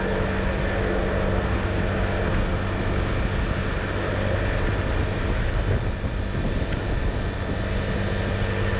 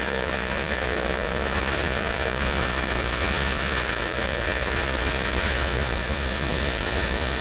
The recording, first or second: first